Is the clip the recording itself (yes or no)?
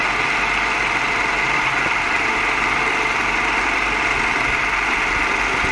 yes